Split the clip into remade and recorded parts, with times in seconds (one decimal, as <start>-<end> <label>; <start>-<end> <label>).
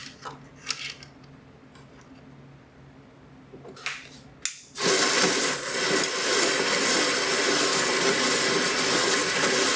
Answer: 0.0-9.8 recorded